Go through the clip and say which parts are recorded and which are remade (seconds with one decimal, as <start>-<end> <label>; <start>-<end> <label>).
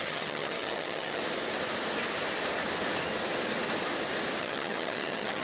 0.0-1.2 remade; 1.2-4.4 recorded; 4.4-5.4 remade